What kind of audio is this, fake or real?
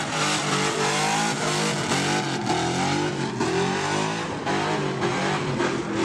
real